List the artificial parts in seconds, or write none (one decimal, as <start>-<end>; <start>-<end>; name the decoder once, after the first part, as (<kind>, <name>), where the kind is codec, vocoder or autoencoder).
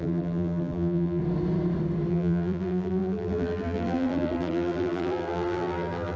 0.0-1.2 (vocoder, BigVGAN v2); 2.1-6.2